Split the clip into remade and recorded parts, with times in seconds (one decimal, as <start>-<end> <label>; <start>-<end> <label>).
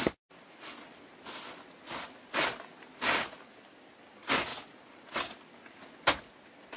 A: 0.0-6.8 recorded